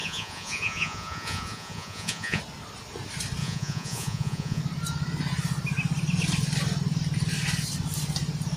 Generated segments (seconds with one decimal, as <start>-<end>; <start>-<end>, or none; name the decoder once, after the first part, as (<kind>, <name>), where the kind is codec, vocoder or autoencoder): 0.0-2.4 (vocoder, Vocos); 3.4-4.6